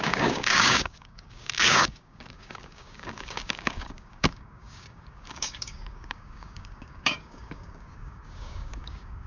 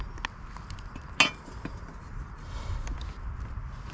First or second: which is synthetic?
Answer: first